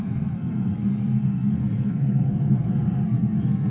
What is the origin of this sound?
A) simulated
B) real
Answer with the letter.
A